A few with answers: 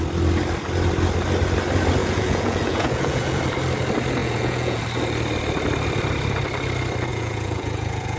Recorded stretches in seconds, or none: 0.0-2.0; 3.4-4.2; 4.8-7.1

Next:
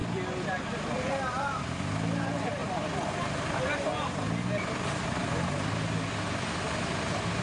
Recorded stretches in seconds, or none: 0.0-7.4

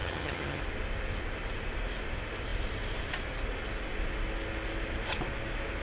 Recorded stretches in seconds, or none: 0.6-5.8

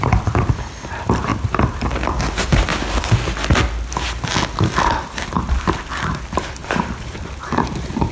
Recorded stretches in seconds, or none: 2.7-3.9

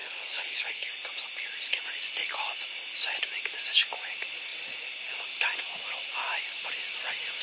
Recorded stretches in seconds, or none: 0.9-7.4

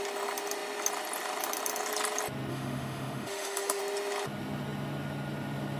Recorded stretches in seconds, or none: 0.0-2.5; 3.8-5.8

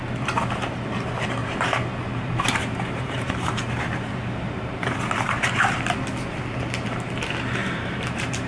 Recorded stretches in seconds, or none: 0.0-1.4; 5.4-7.6

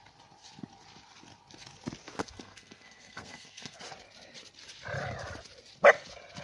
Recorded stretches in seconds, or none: 0.0-2.2; 3.8-6.4